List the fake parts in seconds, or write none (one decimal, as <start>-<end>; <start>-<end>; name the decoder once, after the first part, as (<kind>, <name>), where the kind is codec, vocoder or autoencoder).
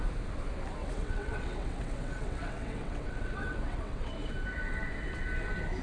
0.8-4.3 (vocoder, WaveNeXt)